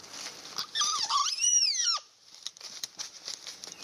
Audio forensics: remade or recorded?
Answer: remade